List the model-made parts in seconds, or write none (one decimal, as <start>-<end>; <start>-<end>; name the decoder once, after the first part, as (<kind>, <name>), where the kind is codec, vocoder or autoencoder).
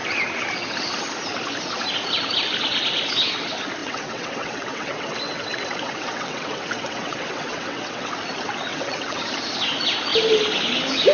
3.8-8.1 (vocoder, WaveNeXt); 8.7-9.2